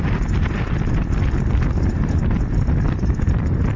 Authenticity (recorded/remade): recorded